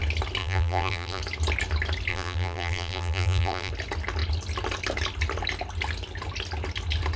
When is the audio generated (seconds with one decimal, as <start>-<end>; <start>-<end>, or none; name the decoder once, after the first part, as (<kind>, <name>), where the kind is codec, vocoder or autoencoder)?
0.4-1.2 (vocoder, BigVGAN v2); 2.1-3.7